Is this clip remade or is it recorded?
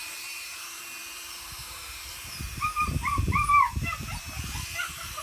remade